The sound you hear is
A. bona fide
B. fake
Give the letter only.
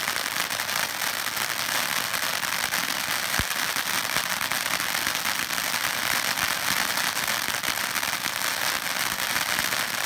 A